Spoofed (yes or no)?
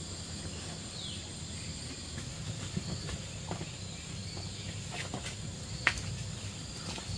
no